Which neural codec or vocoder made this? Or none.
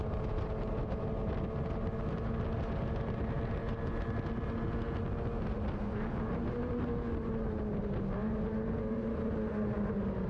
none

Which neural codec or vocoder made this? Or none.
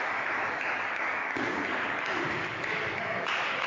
codec, DAC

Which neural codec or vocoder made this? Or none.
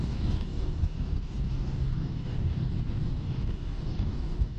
codec, DAC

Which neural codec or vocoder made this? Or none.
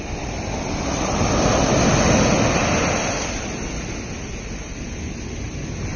none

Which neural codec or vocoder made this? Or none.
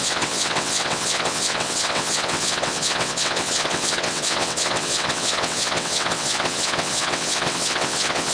vocoder, WaveNeXt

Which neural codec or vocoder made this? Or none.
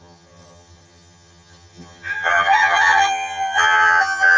vocoder, HiFi-GAN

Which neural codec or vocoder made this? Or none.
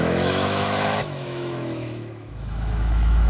autoencoder, DAC-VAE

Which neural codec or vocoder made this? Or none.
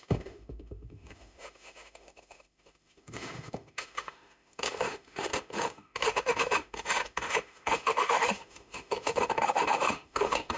autoencoder, DAC-VAE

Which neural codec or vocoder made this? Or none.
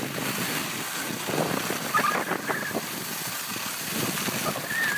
none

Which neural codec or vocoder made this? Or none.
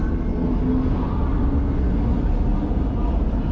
none